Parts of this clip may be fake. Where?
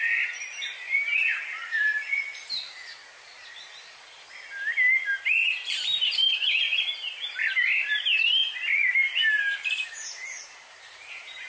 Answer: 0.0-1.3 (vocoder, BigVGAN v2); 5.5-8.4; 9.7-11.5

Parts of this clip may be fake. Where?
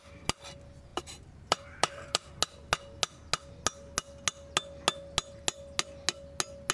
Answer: 0.9-2.3 (vocoder, BigVGAN v2)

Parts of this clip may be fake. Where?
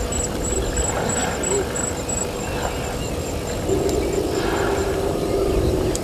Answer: 4.8-6.0 (vocoder, BigVGAN v2)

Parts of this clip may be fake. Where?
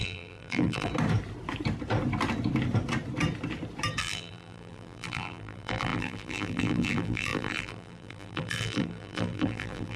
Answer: 0.0-0.9 (vocoder, BigVGAN v2); 4.0-10.0